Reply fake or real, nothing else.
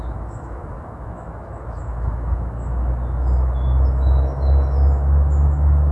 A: fake